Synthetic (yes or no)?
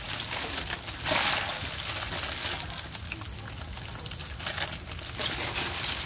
no